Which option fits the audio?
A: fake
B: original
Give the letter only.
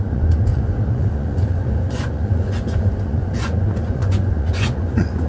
A